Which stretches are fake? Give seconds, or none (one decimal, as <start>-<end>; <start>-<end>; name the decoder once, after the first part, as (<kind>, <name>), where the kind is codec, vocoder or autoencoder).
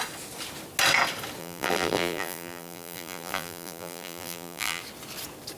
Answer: 1.4-4.8 (vocoder, BigVGAN v2)